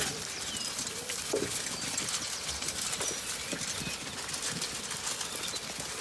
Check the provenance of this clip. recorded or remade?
recorded